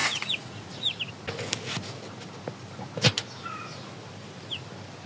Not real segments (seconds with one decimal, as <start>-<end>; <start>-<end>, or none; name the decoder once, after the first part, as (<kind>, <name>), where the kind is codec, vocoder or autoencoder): 0.0-1.0 (vocoder, Vocos)